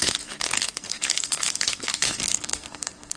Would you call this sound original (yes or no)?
no